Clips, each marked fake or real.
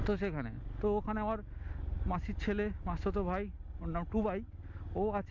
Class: real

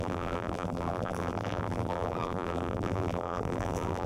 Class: fake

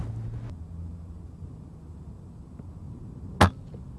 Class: real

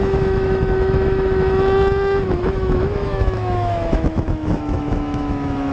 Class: fake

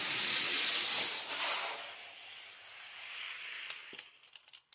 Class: real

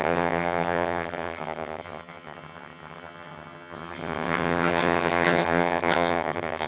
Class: fake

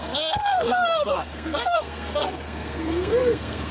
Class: fake